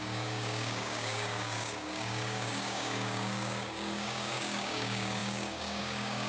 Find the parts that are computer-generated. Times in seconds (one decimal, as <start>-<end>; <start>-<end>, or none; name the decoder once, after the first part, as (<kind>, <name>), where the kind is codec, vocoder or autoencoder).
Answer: 0.0-6.3 (codec, DAC)